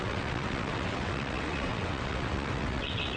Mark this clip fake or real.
fake